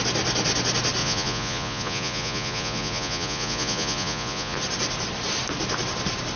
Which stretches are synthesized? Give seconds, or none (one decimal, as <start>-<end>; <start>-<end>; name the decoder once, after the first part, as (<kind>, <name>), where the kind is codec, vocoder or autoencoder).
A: 1.0-4.6 (vocoder, Vocos)